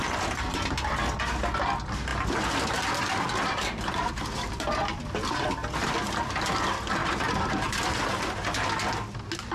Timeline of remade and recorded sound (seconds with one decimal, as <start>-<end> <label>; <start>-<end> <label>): 0.0-2.1 recorded; 2.1-5.5 remade; 5.5-7.0 recorded; 7.0-7.5 remade; 7.5-9.5 recorded